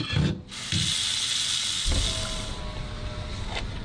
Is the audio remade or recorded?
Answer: recorded